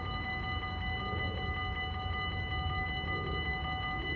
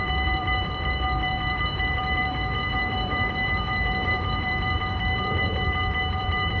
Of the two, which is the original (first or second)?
first